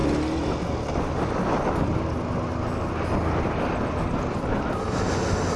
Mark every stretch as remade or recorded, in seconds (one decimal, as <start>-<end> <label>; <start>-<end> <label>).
0.0-5.6 recorded